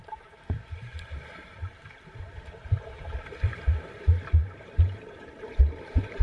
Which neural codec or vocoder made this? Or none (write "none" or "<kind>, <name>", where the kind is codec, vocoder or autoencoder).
vocoder, BigVGAN v2